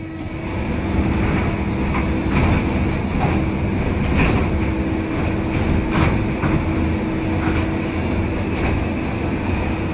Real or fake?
real